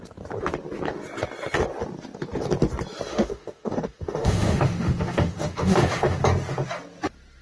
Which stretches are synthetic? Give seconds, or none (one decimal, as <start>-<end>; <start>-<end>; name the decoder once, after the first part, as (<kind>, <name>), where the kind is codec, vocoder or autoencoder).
3.1-6.2 (autoencoder, DAC-VAE)